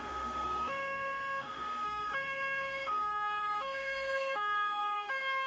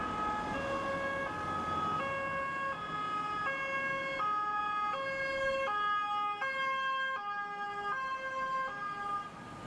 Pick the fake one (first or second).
first